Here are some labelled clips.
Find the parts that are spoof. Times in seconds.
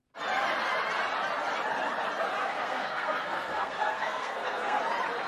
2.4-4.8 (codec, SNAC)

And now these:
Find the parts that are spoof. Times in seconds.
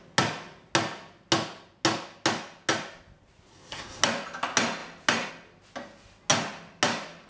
3.5-4.0 (codec, SNAC)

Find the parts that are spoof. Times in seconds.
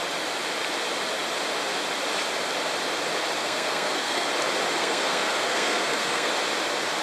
3.4-4.3 (codec, SNAC); 4.8-6.3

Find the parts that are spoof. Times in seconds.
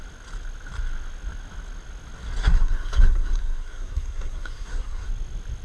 2.4-5.1 (codec, SNAC)